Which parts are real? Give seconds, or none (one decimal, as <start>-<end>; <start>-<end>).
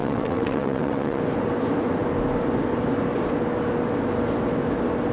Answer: 1.2-5.1